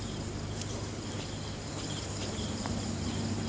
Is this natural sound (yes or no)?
no